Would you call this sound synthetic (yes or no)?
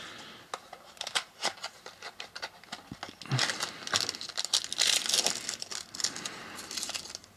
no